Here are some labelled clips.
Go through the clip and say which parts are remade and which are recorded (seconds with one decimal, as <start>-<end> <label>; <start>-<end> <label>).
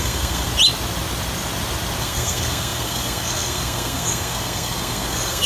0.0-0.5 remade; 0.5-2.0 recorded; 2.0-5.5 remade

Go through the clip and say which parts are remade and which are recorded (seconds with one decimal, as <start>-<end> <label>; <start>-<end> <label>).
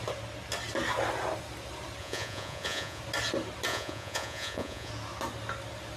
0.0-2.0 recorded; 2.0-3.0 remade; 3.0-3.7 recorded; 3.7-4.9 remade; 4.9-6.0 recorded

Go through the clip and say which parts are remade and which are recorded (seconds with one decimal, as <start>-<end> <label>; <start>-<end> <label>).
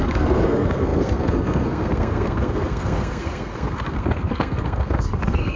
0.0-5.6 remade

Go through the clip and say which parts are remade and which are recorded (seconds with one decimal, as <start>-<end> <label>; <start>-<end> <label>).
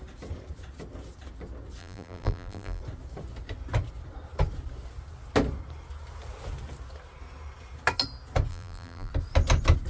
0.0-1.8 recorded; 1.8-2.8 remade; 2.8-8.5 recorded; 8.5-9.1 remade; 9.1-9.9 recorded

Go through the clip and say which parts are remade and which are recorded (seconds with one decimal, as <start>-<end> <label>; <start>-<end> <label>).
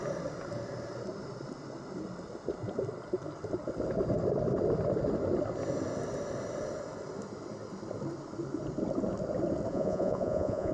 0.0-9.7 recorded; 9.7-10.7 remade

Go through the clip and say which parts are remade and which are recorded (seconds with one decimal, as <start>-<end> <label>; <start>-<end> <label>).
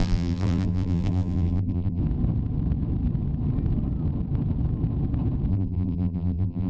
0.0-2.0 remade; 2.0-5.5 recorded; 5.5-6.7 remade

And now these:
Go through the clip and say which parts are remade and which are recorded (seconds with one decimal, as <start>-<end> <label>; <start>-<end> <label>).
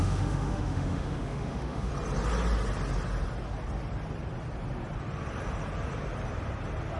0.0-1.9 remade; 1.9-7.0 recorded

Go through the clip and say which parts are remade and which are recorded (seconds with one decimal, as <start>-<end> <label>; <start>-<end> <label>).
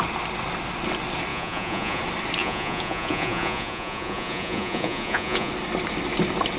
0.0-1.3 recorded; 1.3-2.0 remade; 2.0-2.4 recorded; 2.4-5.5 remade; 5.5-6.6 recorded